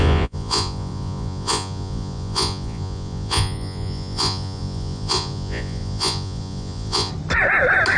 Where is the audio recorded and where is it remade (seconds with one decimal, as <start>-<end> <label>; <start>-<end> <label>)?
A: 0.0-7.1 remade; 7.1-8.0 recorded